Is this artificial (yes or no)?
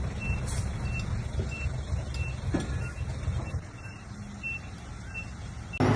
no